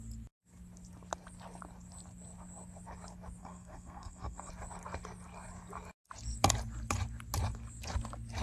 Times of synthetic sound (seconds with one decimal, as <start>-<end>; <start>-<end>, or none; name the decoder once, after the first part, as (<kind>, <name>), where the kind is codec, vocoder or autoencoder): 3.4-4.5 (codec, SNAC)